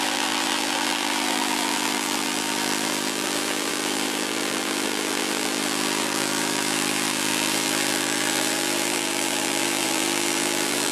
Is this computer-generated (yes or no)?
yes